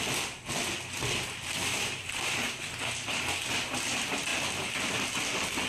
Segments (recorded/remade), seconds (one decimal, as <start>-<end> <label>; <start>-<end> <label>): 0.0-1.7 recorded; 1.7-2.7 remade; 2.7-5.7 recorded